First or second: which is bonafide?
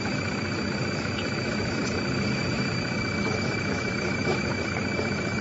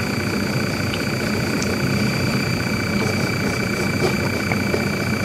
second